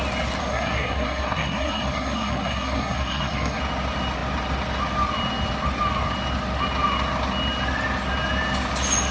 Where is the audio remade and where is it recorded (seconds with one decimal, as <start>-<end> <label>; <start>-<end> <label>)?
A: 0.0-0.4 recorded; 0.4-3.6 remade; 3.6-9.1 recorded